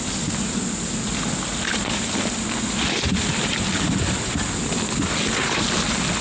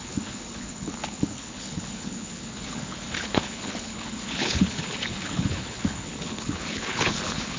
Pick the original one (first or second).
first